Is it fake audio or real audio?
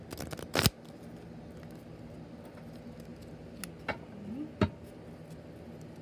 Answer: real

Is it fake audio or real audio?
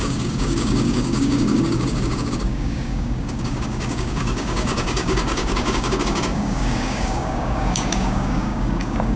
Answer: fake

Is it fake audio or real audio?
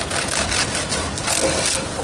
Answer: real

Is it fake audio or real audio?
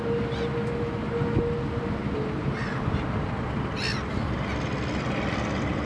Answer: real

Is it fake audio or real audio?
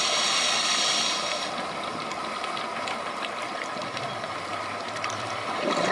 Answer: real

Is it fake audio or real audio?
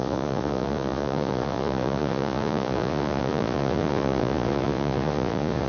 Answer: fake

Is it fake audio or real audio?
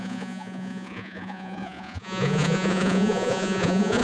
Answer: fake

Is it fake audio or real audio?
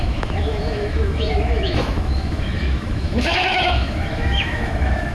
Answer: fake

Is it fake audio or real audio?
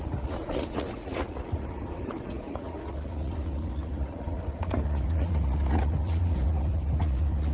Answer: fake